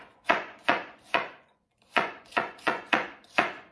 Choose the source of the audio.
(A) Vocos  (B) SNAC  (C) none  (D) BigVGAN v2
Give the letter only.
A